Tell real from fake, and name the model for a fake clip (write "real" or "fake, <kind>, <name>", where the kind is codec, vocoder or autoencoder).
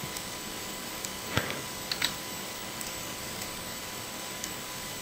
fake, codec, DAC